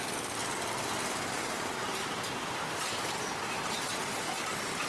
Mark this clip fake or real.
real